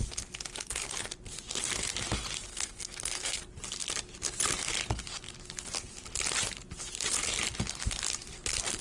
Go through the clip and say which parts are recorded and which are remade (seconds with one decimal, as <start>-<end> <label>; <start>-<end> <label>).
0.0-2.5 recorded; 2.5-3.4 remade; 3.4-8.8 recorded